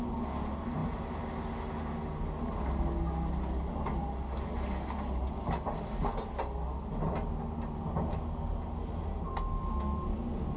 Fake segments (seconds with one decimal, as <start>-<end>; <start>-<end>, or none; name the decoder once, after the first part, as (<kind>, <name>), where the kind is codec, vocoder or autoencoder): none